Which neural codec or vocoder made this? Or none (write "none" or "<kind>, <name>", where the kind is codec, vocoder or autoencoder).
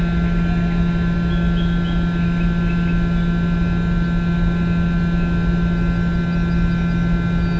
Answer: none